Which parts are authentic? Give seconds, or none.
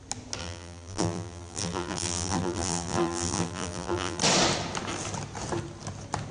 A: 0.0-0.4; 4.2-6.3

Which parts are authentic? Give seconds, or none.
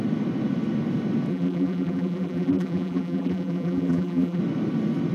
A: 0.0-1.3; 4.4-5.1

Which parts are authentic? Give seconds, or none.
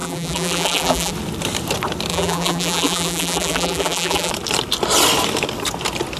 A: 1.1-2.1; 4.3-6.2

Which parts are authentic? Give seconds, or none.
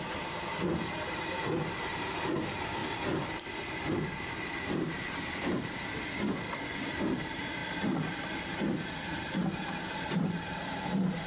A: none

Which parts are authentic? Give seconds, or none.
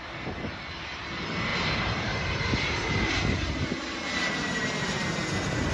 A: 0.0-1.5; 3.1-5.7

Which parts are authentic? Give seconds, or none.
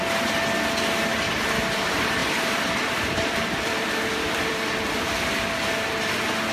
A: 0.0-2.2; 5.7-6.5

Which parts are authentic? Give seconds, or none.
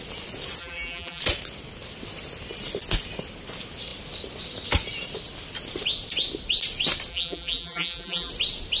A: 0.0-0.6; 1.2-7.1; 8.3-8.8